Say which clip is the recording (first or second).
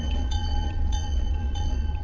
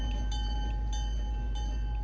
second